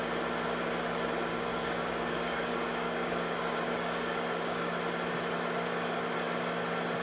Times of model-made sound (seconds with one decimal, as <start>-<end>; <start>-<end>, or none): 1.3-4.7